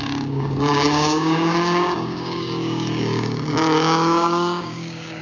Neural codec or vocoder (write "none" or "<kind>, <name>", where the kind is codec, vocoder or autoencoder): codec, DAC